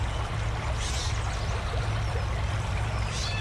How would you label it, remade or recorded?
recorded